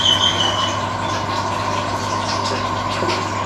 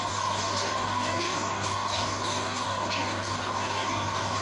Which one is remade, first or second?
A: second